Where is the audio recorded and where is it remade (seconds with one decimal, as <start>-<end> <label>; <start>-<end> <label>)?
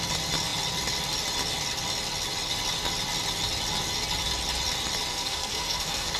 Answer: 0.0-5.1 recorded; 5.1-6.2 remade